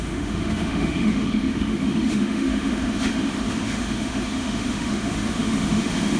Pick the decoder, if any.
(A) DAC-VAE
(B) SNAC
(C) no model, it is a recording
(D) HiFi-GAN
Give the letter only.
A